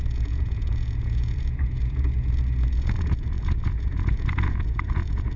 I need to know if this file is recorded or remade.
remade